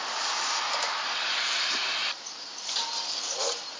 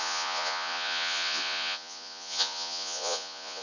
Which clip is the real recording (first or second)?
first